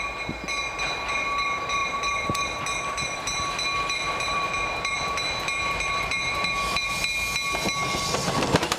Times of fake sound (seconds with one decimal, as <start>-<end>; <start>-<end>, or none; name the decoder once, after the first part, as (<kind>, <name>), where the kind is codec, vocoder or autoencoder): 1.8-6.9 (vocoder, BigVGAN v2)